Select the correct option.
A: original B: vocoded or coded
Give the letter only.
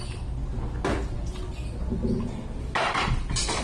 A